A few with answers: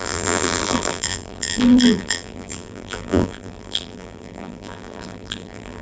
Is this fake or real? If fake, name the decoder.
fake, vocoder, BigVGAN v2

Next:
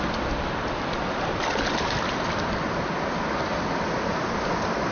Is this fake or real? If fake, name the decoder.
real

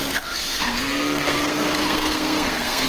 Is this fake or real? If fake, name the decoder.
fake, codec, SNAC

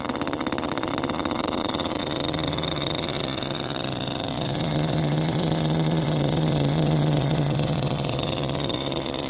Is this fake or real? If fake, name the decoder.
fake, vocoder, Vocos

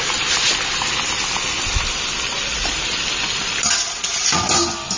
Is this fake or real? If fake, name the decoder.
real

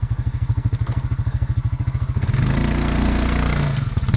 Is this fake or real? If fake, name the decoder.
fake, codec, SNAC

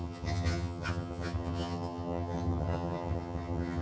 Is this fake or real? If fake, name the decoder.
fake, vocoder, HiFi-GAN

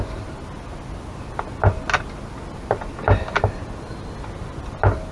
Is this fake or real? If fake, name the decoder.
real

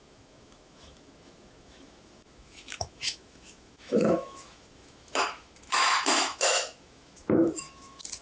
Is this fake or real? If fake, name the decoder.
fake, autoencoder, DAC-VAE